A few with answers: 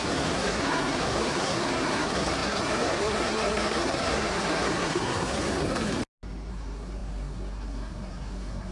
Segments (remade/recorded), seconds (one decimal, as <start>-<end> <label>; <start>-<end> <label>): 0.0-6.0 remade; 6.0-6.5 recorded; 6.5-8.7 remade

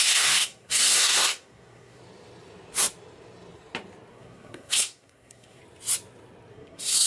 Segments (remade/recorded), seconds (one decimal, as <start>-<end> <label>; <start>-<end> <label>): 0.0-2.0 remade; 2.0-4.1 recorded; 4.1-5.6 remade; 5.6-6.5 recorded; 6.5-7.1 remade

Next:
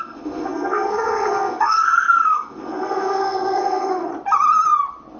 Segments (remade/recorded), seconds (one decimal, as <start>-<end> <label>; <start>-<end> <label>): 0.0-4.1 remade; 4.1-5.2 recorded

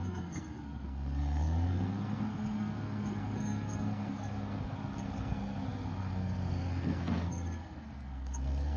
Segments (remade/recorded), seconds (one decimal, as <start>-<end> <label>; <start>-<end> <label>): 0.0-8.8 remade

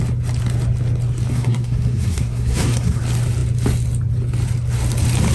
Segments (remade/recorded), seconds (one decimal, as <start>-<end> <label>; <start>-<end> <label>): 0.0-1.3 recorded; 1.3-3.0 remade; 3.0-5.3 recorded

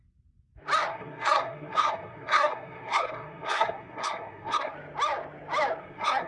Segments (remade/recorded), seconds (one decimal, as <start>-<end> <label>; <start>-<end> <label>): 0.0-0.9 recorded; 0.9-4.7 remade; 4.7-5.8 recorded; 5.8-6.3 remade

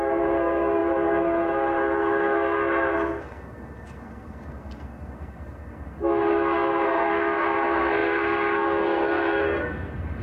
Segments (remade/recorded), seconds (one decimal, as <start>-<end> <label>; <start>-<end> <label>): 0.0-10.2 remade

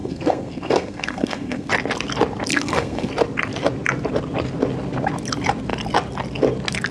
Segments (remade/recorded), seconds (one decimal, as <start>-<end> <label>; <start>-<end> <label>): 0.0-1.7 remade; 1.7-2.5 recorded; 2.5-3.1 remade; 3.1-6.9 recorded